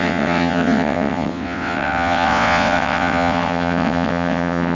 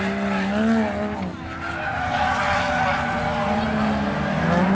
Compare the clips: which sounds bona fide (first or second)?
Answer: second